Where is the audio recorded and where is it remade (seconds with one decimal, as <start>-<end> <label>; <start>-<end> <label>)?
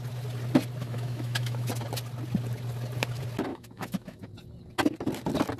0.0-0.8 recorded; 0.8-1.7 remade; 1.7-3.5 recorded; 3.5-4.2 remade; 4.2-5.6 recorded